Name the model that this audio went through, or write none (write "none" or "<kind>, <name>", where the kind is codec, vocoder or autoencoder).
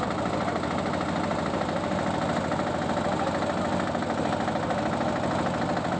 none